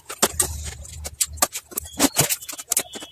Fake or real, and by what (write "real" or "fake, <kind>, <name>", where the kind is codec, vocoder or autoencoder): real